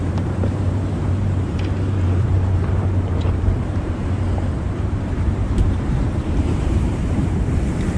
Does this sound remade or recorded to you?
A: remade